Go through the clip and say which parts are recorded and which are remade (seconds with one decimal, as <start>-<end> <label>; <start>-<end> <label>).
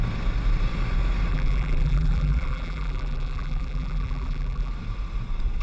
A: 0.0-1.3 recorded; 1.3-4.7 remade; 4.7-5.6 recorded